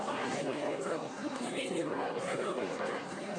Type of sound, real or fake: fake